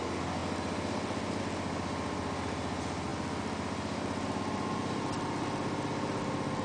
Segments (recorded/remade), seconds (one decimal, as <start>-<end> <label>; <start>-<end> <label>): 0.0-6.6 recorded